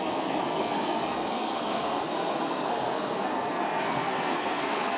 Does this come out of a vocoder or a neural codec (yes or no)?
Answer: yes